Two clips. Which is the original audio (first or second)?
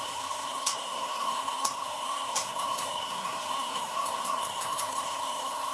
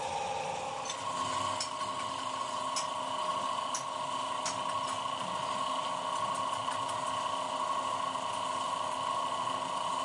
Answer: second